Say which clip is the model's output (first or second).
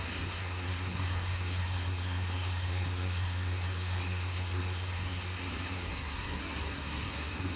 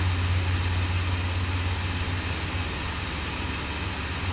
first